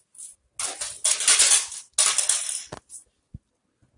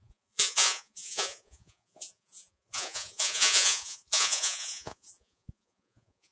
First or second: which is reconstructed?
second